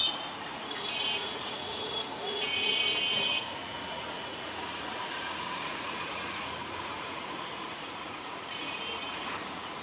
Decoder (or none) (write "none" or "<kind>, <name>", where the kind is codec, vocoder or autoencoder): vocoder, Vocos